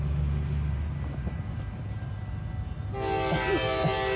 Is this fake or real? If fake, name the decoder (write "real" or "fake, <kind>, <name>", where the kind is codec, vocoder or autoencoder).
real